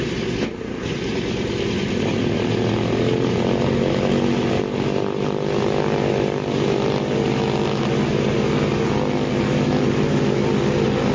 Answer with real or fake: real